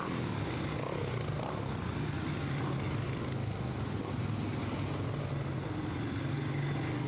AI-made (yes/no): no